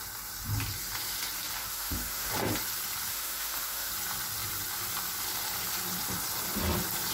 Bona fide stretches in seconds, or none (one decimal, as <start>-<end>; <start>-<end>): 0.0-1.6; 2.3-3.1; 3.9-7.1